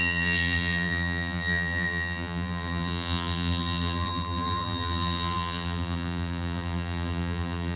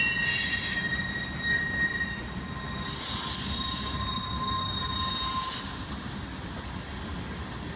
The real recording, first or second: second